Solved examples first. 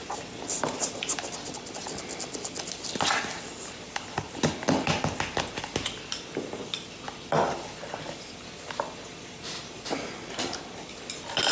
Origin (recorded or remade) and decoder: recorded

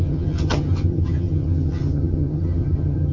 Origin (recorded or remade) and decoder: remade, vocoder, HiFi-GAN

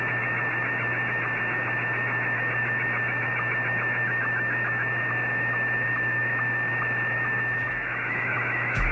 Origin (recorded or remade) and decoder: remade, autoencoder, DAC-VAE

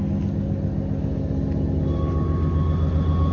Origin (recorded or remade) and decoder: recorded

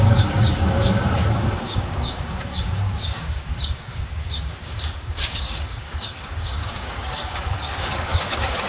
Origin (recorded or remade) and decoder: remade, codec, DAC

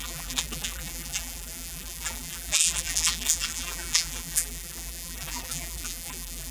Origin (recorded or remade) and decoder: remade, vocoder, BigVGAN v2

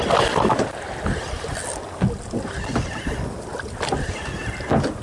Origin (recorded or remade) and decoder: recorded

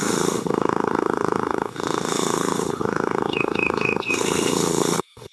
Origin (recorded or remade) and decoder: remade, autoencoder, DAC-VAE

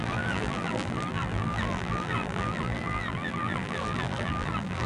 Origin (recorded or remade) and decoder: remade, vocoder, BigVGAN v2